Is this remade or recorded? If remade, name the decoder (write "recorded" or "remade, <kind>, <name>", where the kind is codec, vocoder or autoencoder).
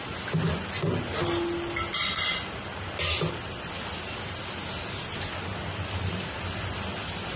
recorded